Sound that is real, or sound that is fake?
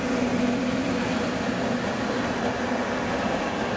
real